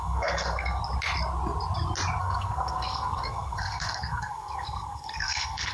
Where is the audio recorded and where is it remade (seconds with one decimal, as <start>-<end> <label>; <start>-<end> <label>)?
0.0-0.8 remade; 0.8-2.2 recorded; 2.2-5.7 remade